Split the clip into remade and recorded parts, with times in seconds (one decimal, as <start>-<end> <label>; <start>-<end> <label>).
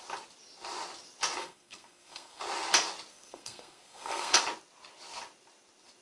0.0-1.4 recorded; 1.4-2.4 remade; 2.4-3.1 recorded; 3.1-4.4 remade; 4.4-6.0 recorded